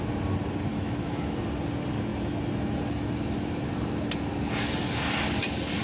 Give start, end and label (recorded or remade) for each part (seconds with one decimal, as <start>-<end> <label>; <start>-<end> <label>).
0.0-0.7 recorded; 0.7-1.4 remade; 1.4-5.8 recorded